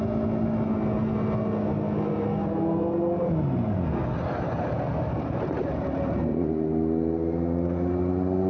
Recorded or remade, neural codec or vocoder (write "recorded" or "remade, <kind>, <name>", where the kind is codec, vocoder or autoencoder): recorded